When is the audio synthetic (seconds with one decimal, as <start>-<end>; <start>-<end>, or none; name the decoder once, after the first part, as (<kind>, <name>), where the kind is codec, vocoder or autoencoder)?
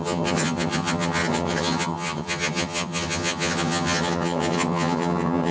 0.0-5.5 (vocoder, HiFi-GAN)